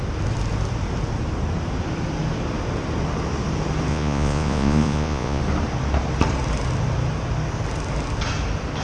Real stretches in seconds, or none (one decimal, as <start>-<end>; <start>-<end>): 0.0-3.9; 5.4-8.8